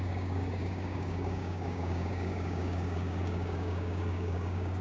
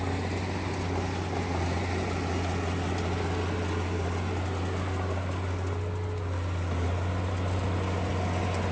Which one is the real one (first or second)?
second